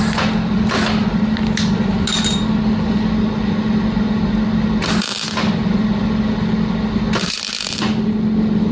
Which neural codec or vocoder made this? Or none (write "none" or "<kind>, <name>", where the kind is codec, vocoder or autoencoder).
none